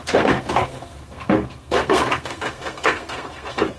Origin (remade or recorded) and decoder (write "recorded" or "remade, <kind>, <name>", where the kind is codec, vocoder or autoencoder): remade, codec, SNAC